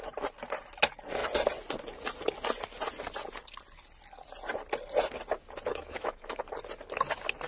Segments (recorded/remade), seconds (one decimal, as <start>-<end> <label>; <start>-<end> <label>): 0.0-5.7 recorded; 5.7-6.4 remade; 6.4-7.5 recorded